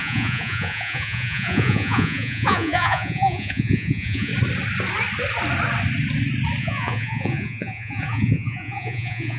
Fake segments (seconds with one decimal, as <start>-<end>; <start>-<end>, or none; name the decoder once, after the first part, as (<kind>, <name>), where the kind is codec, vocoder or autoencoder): 0.0-4.3 (vocoder, Vocos); 6.6-9.4